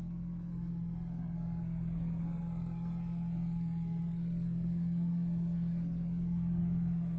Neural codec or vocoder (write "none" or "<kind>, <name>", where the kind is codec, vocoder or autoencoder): codec, SNAC